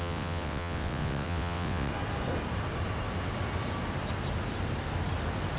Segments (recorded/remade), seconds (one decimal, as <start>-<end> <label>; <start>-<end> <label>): 0.0-1.9 remade; 1.9-5.6 recorded